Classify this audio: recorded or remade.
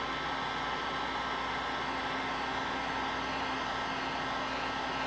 recorded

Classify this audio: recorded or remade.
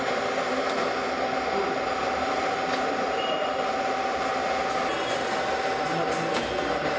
recorded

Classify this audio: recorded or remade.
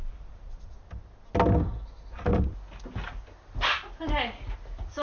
recorded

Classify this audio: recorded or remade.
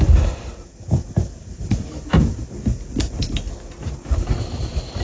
recorded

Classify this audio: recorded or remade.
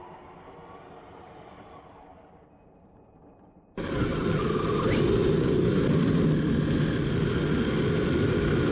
recorded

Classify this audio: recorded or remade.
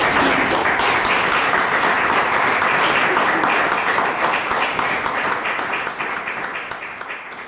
recorded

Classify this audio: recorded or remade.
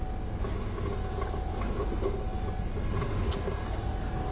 recorded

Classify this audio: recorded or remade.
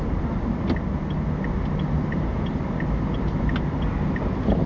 recorded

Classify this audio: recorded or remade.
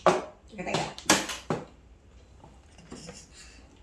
recorded